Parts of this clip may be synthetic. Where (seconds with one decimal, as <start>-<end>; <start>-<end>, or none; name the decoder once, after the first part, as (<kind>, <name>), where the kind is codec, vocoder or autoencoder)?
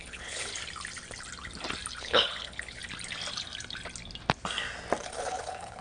0.0-0.5 (codec, HILCodec); 2.0-2.8; 5.0-5.8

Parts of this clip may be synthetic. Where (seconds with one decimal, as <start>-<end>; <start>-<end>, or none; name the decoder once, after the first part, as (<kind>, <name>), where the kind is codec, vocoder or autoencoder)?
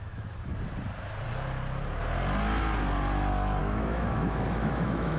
0.0-0.5 (autoencoder, DAC-VAE); 3.6-5.2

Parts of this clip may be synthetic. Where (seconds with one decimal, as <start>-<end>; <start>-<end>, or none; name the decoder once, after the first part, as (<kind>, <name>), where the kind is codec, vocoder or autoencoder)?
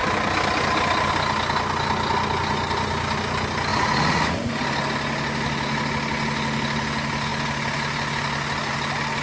3.7-4.5 (vocoder, Vocos)